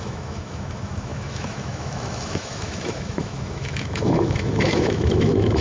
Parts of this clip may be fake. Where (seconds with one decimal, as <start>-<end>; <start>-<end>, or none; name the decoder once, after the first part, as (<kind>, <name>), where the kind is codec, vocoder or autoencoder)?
0.0-5.6 (autoencoder, DAC-VAE)